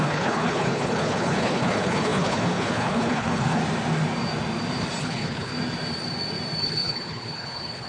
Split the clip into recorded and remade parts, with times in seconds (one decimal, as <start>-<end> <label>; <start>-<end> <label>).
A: 0.0-3.6 remade; 3.6-5.0 recorded; 5.0-5.5 remade; 5.5-6.6 recorded; 6.6-7.9 remade